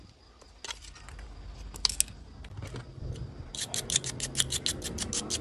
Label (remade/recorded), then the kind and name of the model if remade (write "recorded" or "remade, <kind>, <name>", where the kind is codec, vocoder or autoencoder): recorded